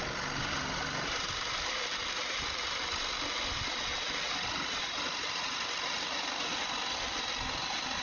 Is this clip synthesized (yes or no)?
no